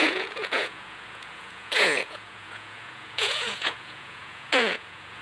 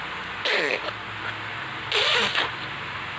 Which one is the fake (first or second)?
first